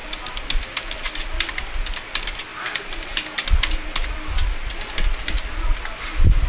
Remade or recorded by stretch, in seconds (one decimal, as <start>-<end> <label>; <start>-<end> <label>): 0.0-6.5 recorded